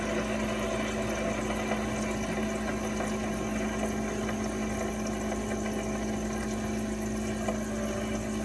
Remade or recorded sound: recorded